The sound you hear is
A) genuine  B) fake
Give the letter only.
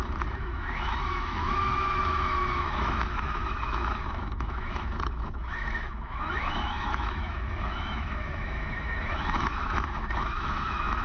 B